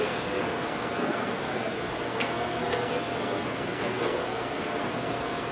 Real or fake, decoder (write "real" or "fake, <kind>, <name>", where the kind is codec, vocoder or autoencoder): fake, codec, SNAC